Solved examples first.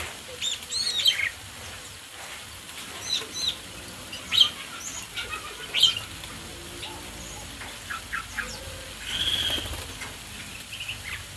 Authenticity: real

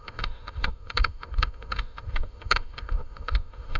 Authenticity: fake